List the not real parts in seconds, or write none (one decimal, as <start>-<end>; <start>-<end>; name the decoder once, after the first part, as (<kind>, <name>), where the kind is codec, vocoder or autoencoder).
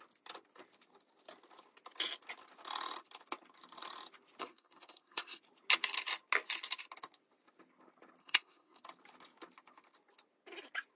4.4-5.4 (codec, SNAC); 8.2-8.8